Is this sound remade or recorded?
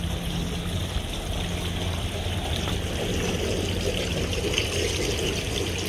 recorded